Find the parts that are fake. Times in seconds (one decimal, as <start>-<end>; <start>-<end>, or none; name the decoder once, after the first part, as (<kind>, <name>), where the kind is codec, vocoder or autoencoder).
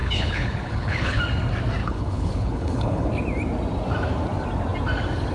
0.0-1.2 (codec, HILCodec); 1.8-3.1